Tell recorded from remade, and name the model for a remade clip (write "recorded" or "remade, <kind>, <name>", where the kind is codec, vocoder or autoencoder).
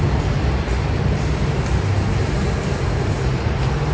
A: recorded